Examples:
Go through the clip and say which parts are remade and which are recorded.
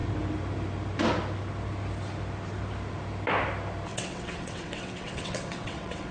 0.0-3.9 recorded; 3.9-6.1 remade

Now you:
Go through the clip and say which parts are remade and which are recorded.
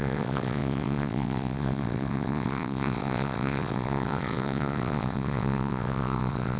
0.0-6.6 remade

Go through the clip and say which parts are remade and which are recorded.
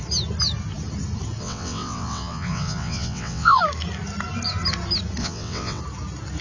0.0-1.4 recorded; 1.4-3.6 remade; 3.6-5.2 recorded; 5.2-5.8 remade; 5.8-6.4 recorded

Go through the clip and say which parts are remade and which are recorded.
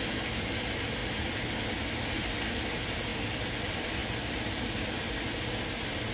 0.0-6.1 recorded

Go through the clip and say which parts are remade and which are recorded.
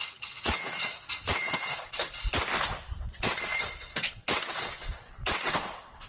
0.0-2.0 remade; 2.0-3.0 recorded; 3.0-6.1 remade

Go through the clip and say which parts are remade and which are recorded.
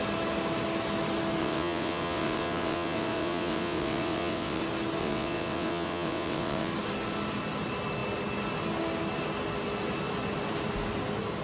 0.0-1.4 recorded; 1.4-4.6 remade; 4.6-5.0 recorded; 5.0-6.7 remade; 6.7-11.4 recorded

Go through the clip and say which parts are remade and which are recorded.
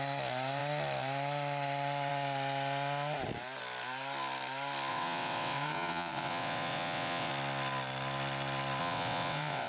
0.0-4.9 recorded; 4.9-7.3 remade; 7.3-8.8 recorded; 8.8-9.7 remade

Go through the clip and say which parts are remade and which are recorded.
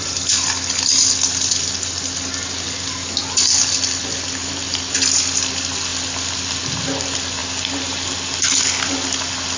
0.0-9.6 recorded